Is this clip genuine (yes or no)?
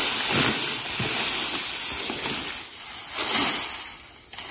yes